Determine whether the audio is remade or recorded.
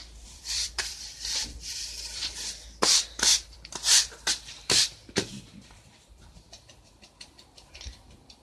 remade